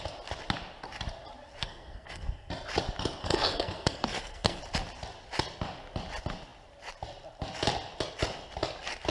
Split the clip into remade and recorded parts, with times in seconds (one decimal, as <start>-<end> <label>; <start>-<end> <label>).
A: 0.0-1.6 recorded; 1.6-2.5 remade; 2.5-3.2 recorded; 3.2-4.6 remade; 4.6-9.1 recorded